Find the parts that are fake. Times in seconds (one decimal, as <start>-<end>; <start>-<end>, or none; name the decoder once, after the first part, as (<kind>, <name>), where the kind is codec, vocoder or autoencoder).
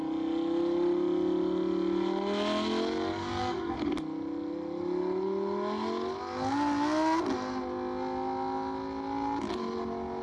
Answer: 3.1-3.9 (codec, DAC)